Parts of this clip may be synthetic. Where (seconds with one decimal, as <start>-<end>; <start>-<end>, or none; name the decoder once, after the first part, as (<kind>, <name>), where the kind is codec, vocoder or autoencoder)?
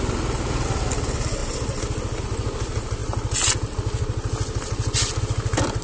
none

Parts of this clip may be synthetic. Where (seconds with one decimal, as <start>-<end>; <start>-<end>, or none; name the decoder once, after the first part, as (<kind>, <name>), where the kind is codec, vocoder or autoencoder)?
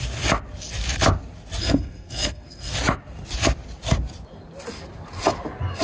1.6-2.7 (codec, SNAC)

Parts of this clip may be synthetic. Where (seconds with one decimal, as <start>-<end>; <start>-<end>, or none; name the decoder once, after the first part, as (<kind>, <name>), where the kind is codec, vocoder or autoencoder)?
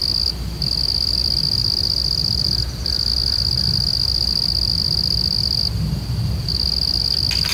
none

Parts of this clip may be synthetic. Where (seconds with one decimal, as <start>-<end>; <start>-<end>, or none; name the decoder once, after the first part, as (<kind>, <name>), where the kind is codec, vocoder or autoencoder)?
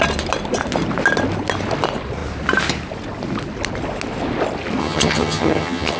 4.8-6.0 (vocoder, HiFi-GAN)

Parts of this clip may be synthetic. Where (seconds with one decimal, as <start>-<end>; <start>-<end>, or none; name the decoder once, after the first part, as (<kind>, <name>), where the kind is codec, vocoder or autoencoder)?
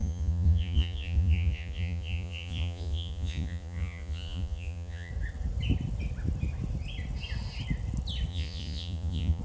0.0-5.1 (vocoder, Vocos); 8.3-9.4